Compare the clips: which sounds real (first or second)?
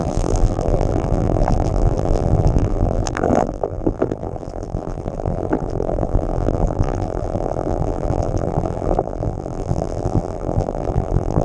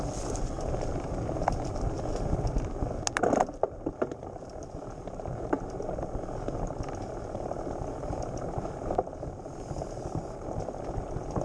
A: second